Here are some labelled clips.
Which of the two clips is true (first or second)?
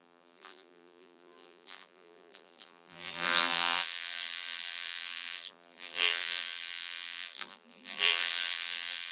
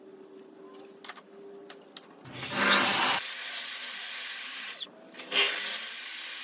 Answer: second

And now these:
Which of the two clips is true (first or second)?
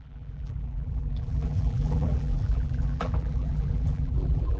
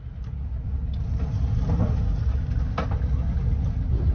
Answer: second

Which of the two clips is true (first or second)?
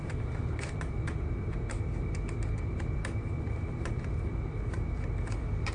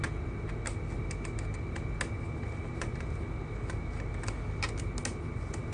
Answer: second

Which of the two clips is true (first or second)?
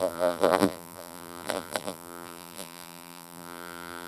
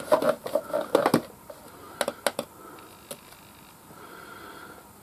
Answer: second